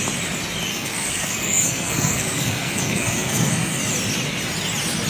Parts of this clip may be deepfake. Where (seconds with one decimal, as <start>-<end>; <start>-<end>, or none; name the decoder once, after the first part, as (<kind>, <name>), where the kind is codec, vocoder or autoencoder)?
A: 0.7-3.8 (codec, SNAC)